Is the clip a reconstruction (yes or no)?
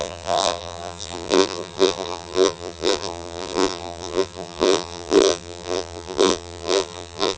yes